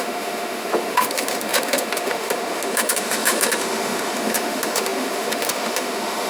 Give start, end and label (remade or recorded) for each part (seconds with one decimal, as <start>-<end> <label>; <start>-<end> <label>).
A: 0.0-6.3 remade